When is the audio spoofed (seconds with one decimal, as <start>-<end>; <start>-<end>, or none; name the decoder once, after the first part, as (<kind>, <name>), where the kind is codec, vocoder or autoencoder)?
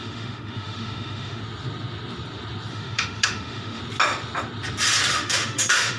0.0-1.4 (autoencoder, DAC-VAE); 2.7-3.8; 5.1-6.0